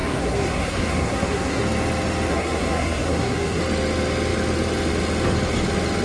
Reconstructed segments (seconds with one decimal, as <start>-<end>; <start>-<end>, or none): 0.0-1.6; 2.3-3.6